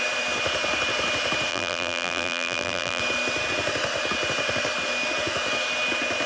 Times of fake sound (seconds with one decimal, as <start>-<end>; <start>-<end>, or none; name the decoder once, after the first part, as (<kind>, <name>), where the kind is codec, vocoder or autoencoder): 1.5-3.0 (vocoder, BigVGAN v2)